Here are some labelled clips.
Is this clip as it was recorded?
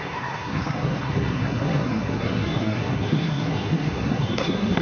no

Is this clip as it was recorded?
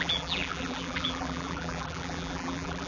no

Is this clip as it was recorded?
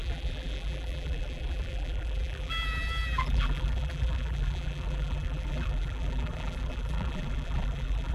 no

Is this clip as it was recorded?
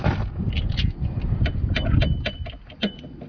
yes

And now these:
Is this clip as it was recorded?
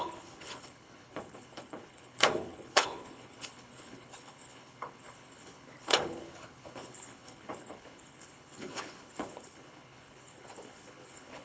no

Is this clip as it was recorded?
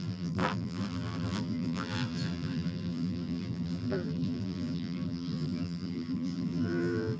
no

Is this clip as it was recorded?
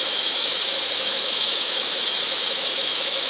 no